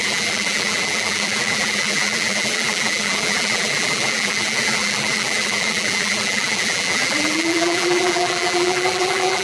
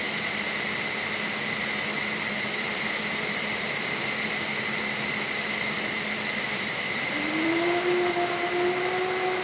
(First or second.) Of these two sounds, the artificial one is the first